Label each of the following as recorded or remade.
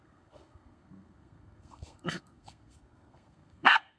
remade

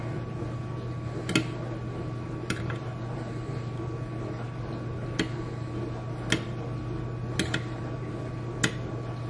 recorded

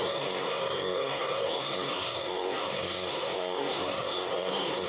remade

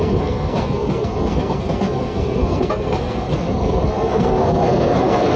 remade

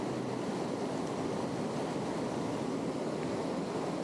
recorded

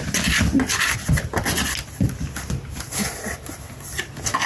recorded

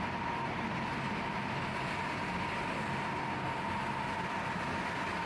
recorded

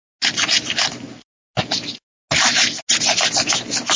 recorded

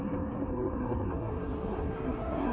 remade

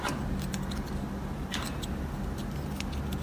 recorded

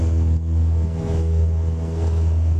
remade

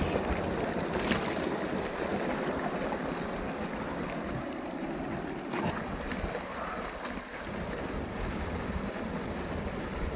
recorded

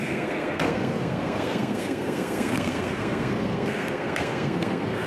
remade